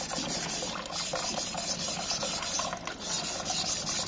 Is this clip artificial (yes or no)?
no